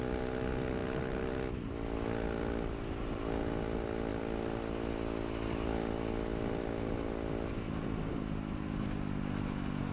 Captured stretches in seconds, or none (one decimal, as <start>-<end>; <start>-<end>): 0.0-9.9